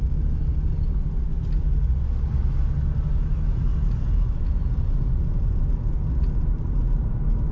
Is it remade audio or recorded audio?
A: recorded